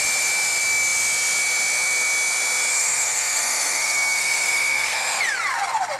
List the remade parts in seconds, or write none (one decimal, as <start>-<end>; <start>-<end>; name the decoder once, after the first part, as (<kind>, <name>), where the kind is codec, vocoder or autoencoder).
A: 2.7-5.2 (codec, SNAC)